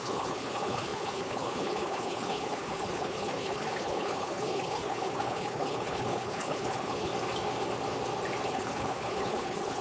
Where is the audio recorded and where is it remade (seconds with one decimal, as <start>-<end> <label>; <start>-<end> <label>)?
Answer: 0.0-7.1 remade; 7.1-8.5 recorded; 8.5-9.8 remade